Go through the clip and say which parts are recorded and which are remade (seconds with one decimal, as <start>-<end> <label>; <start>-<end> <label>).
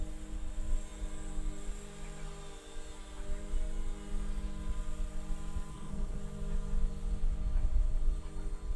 0.0-5.7 recorded; 5.7-6.2 remade; 6.2-8.8 recorded